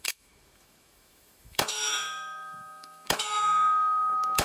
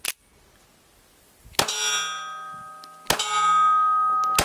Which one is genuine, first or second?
second